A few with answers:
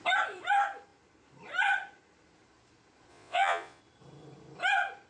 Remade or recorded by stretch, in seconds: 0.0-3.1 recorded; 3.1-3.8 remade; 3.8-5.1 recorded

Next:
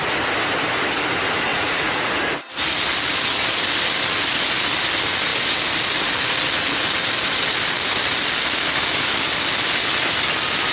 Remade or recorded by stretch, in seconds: 0.0-1.5 recorded; 1.5-2.1 remade; 2.1-10.7 recorded

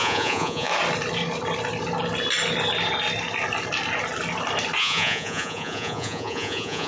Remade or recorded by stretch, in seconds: 0.0-0.7 remade; 0.7-4.8 recorded; 4.8-6.9 remade